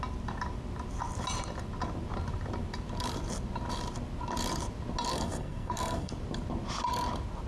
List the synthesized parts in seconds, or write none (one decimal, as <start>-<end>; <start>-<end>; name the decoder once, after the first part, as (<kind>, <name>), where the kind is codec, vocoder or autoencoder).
5.1-6.1 (codec, SNAC)